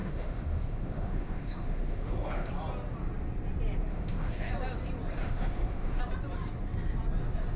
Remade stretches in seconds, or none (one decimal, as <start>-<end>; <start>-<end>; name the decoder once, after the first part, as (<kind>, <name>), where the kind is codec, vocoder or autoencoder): 0.0-2.5 (autoencoder, DAC-VAE); 3.9-4.5; 5.2-6.0